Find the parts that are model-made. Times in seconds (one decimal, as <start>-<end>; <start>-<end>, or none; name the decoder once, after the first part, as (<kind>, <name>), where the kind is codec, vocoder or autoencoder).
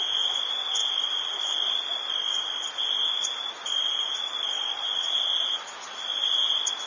none